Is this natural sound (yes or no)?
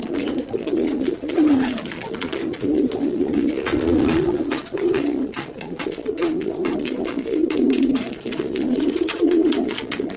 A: no